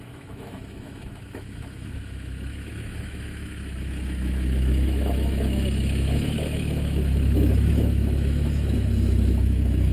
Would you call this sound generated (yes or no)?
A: yes